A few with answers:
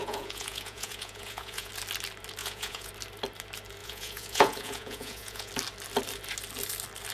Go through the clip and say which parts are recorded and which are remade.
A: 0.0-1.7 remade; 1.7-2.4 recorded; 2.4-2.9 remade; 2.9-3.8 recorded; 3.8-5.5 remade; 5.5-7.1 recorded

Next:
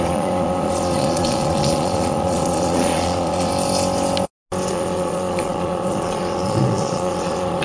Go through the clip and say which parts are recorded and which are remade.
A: 0.0-3.5 remade; 3.5-4.7 recorded; 4.7-7.6 remade

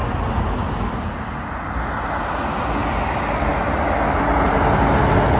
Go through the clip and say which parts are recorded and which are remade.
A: 0.0-5.4 recorded

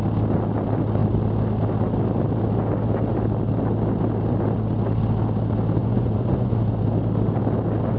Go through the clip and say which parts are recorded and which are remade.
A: 0.0-5.8 recorded; 5.8-6.6 remade; 6.6-8.0 recorded